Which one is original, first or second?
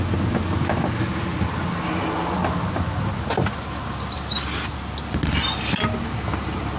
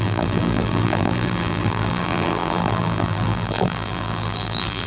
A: first